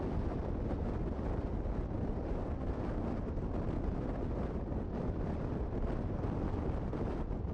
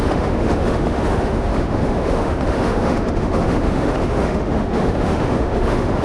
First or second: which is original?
first